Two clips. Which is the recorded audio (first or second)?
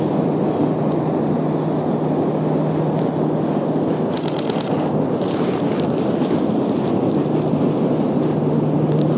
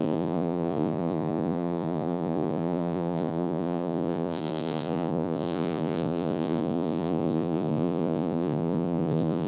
first